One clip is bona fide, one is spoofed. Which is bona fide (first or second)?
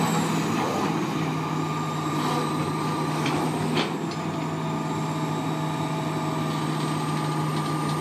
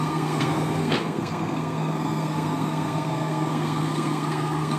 first